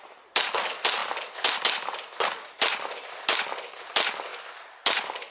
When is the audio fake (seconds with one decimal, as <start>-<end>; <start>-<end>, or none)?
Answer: none